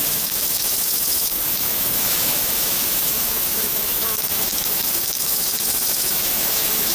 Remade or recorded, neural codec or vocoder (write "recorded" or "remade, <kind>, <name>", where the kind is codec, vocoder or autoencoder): remade, autoencoder, DAC-VAE